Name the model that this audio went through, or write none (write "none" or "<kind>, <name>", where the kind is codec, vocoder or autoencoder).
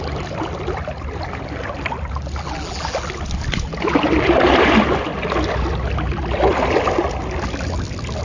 none